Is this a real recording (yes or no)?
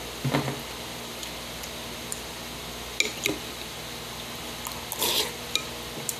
yes